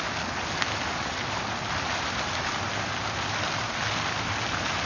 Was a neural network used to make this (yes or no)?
no